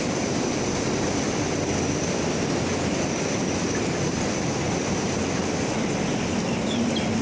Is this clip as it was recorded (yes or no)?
no